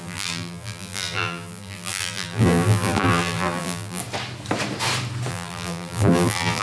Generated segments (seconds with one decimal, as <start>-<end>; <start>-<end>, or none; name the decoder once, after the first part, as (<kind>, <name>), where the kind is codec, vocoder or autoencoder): 0.0-4.0 (vocoder, BigVGAN v2); 5.3-6.6